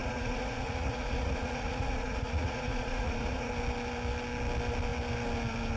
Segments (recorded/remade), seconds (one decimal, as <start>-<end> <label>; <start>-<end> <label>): 0.0-3.5 remade; 3.5-5.8 recorded